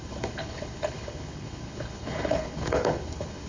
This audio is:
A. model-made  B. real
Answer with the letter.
A